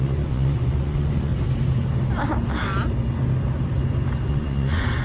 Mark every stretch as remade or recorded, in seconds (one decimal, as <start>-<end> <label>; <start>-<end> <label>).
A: 0.0-1.3 remade; 1.3-4.3 recorded; 4.3-5.0 remade